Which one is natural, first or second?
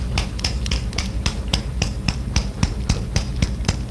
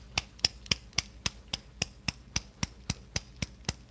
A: second